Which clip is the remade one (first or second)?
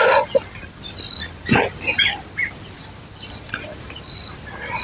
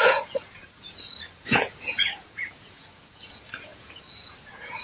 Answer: second